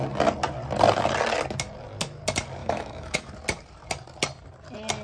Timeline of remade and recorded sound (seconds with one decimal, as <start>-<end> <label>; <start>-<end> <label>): 0.0-2.6 recorded; 2.6-3.3 remade; 3.3-5.0 recorded

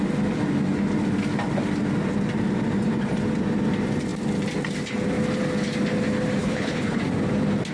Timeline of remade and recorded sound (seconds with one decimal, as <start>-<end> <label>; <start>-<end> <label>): 0.0-6.4 recorded; 6.4-7.0 remade; 7.0-7.7 recorded

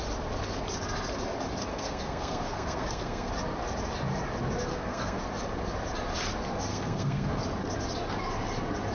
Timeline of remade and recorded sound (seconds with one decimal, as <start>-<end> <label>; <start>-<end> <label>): 0.0-1.7 recorded; 1.7-3.3 remade; 3.3-4.7 recorded; 4.7-5.2 remade; 5.2-6.7 recorded; 6.7-7.4 remade; 7.4-8.9 recorded

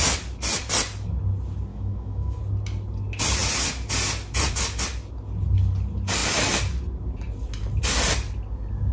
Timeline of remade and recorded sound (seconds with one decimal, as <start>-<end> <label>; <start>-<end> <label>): 0.0-1.7 recorded; 1.7-2.4 remade; 2.4-8.9 recorded

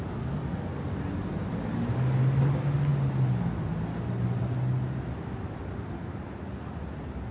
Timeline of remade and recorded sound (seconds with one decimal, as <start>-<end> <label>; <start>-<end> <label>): 0.0-7.3 recorded

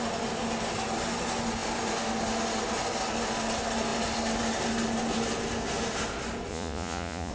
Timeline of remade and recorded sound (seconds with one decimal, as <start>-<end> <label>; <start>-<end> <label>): 0.0-6.5 recorded; 6.5-7.3 remade